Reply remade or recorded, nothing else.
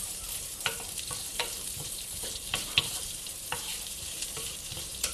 remade